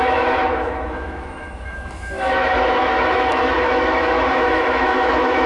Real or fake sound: fake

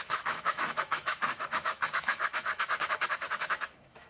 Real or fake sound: fake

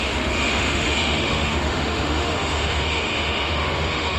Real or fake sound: fake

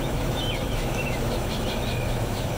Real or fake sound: fake